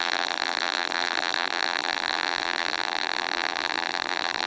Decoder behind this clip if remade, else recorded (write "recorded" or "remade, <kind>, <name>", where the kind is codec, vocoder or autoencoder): remade, vocoder, BigVGAN v2